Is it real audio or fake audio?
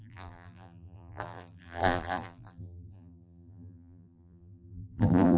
fake